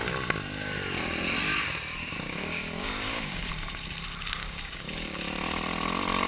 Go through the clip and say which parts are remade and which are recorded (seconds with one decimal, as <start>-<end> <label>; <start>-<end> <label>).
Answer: 0.0-2.0 recorded; 2.0-3.5 remade; 3.5-4.4 recorded; 4.4-5.2 remade; 5.2-6.3 recorded